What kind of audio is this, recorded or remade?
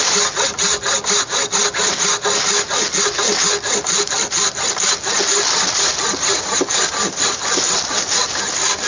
recorded